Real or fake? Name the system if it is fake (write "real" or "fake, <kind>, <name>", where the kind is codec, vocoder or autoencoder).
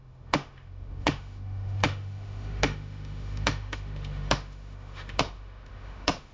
fake, autoencoder, DAC-VAE